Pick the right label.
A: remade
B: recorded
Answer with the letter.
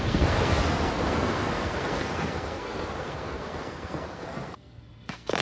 A